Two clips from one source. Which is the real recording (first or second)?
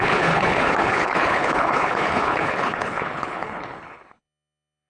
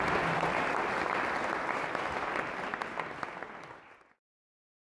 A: second